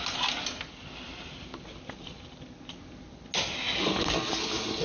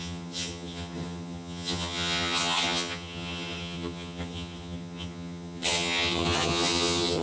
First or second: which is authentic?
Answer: first